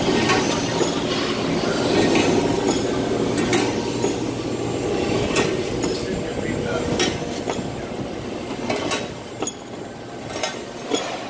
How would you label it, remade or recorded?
recorded